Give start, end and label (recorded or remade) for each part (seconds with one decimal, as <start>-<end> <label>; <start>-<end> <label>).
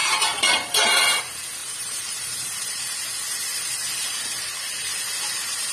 0.0-1.2 remade; 1.2-1.6 recorded; 1.6-2.8 remade; 2.8-5.7 recorded